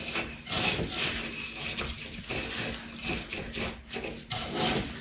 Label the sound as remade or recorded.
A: recorded